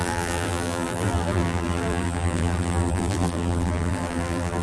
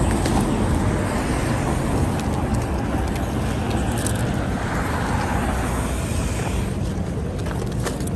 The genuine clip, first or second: second